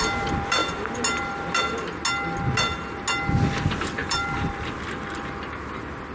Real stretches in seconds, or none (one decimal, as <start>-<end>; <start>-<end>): 0.0-4.0; 4.7-6.1